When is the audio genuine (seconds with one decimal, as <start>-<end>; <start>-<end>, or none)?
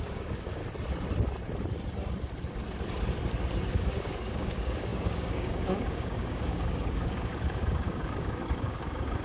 0.6-3.7